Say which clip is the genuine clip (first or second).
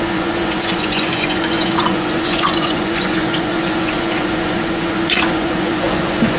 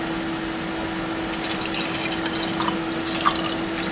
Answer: second